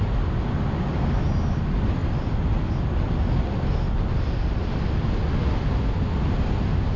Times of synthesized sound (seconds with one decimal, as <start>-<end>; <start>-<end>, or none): none